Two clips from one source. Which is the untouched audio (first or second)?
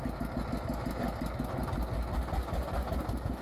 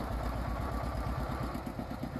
first